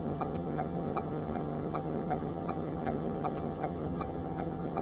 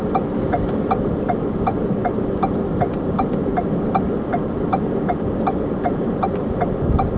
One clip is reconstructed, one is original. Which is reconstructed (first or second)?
first